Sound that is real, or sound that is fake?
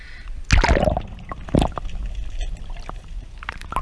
real